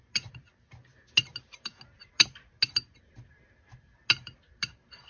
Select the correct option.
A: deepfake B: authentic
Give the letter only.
B